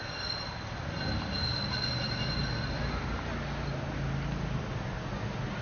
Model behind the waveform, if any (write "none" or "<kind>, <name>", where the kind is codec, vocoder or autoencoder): none